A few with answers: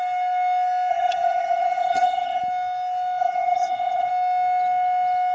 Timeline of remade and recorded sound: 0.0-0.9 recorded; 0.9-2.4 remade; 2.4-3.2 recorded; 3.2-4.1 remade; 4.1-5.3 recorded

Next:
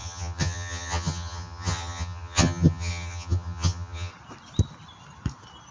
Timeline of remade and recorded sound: 0.0-4.1 remade; 4.1-5.7 recorded

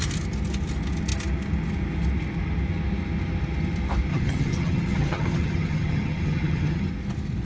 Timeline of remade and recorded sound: 0.0-4.1 recorded; 4.1-6.9 remade; 6.9-7.5 recorded

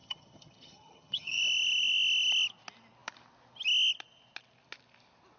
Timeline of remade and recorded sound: 0.0-1.4 remade; 1.4-5.4 recorded